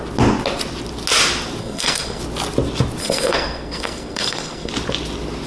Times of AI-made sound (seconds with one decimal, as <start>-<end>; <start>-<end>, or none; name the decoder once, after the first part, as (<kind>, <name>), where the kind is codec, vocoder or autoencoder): 1.6-2.2 (codec, SNAC); 3.0-4.7